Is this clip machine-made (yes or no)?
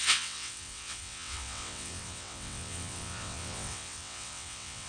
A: yes